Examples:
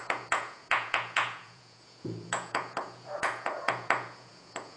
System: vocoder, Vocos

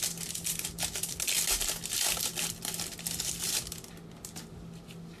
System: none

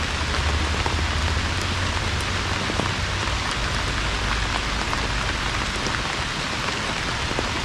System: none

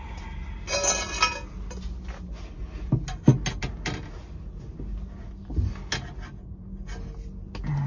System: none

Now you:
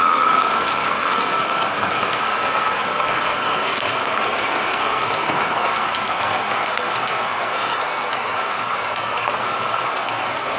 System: codec, SNAC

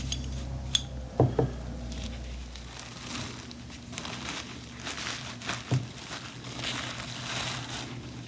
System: none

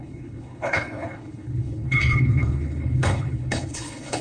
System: codec, HILCodec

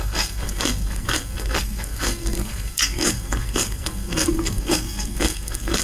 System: codec, SNAC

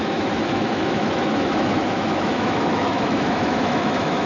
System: autoencoder, DAC-VAE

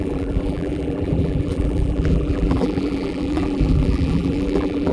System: vocoder, BigVGAN v2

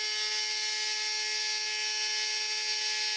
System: none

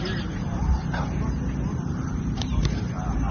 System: vocoder, BigVGAN v2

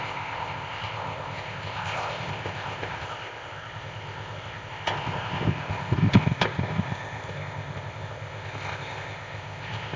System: codec, ZipCodec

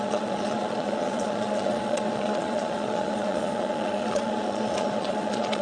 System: vocoder, Vocos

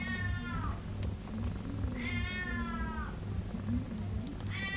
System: none